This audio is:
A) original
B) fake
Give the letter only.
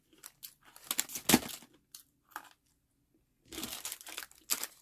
A